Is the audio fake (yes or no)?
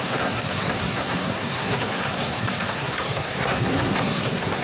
yes